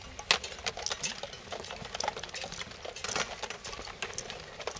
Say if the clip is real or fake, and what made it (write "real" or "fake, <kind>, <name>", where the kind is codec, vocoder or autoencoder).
real